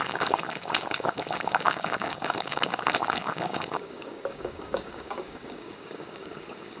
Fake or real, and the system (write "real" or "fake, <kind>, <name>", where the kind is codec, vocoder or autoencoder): fake, codec, DAC